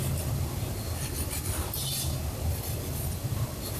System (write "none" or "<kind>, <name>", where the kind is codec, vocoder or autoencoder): none